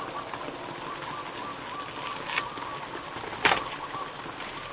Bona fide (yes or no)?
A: yes